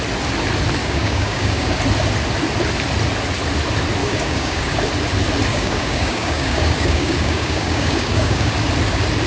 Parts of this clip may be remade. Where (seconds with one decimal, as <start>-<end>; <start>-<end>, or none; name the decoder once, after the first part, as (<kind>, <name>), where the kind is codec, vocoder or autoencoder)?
0.8-1.8 (codec, DAC); 4.0-4.8; 5.5-8.5